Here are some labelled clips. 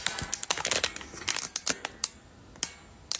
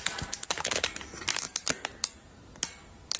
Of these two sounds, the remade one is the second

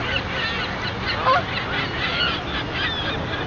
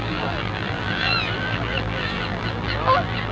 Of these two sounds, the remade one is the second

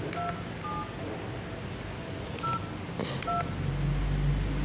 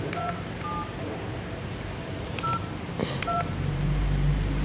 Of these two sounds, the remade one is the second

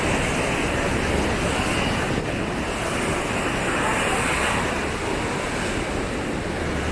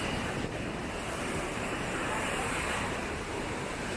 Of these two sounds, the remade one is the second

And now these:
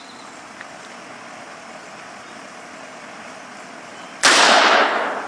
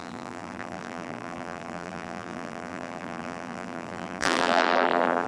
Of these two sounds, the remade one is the second